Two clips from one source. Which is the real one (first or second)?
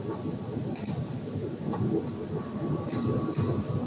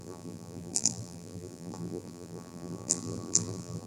first